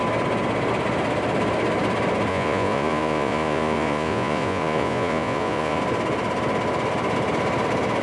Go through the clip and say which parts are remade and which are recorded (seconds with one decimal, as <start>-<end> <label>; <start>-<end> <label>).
0.0-2.3 recorded; 2.3-5.8 remade; 5.8-8.0 recorded